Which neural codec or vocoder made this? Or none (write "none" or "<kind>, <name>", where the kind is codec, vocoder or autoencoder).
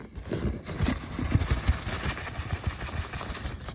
none